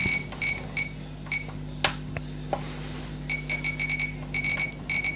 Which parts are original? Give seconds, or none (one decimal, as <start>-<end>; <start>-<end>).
0.0-5.2

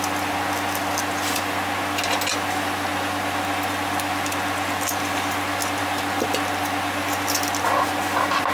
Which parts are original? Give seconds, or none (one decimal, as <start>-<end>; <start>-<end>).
0.0-8.5

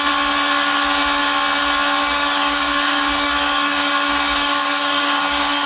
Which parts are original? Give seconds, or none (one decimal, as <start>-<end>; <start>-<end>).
0.0-2.0

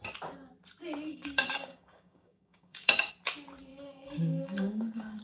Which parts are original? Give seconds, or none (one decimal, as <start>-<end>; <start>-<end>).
0.0-1.1; 3.1-3.7

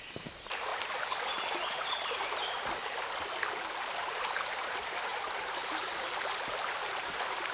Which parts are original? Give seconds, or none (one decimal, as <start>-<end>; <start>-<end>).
0.0-7.5

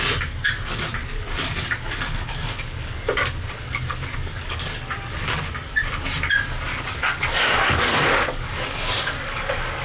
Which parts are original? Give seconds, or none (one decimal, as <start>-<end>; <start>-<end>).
0.0-1.0; 5.4-6.7

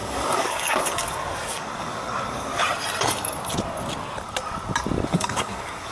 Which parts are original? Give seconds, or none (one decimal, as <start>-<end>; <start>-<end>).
2.5-5.1